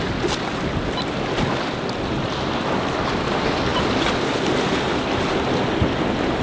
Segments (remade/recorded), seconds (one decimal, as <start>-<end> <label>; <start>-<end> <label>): 0.0-6.4 recorded